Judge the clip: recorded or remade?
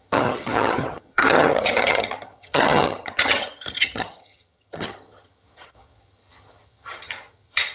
remade